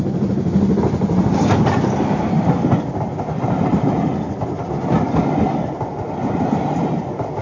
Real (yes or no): yes